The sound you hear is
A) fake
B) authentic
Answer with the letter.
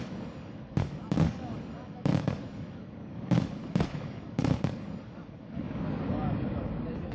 A